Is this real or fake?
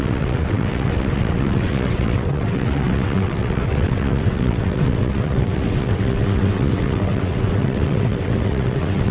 fake